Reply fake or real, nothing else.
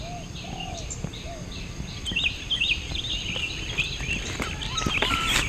real